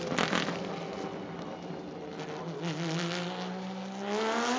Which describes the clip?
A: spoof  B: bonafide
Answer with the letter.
B